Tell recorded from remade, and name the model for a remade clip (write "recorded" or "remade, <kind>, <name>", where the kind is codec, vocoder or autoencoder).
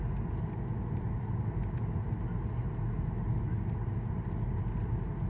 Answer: recorded